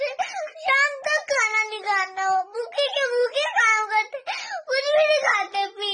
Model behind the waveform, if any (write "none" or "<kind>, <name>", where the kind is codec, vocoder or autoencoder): none